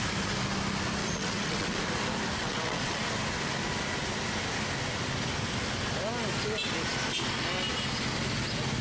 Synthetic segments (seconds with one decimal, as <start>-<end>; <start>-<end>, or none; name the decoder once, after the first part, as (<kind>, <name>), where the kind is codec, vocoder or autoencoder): 1.0-1.8 (vocoder, WaveNeXt); 2.4-3.0